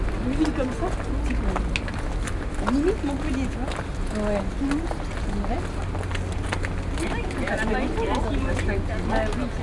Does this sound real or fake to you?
real